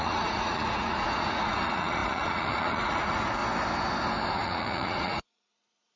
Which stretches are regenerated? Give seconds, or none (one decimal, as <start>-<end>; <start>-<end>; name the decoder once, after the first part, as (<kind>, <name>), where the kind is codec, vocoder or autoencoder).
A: 0.0-3.4 (vocoder, Vocos); 4.3-6.0